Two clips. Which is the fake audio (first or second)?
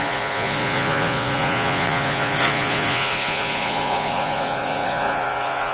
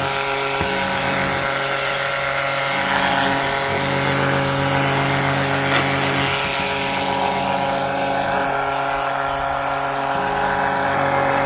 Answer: first